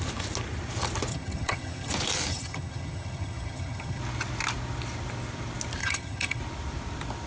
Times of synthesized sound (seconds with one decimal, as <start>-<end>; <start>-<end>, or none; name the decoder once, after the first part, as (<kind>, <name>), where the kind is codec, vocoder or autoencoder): 1.1-1.9 (vocoder, HiFi-GAN); 2.3-4.0; 5.8-6.4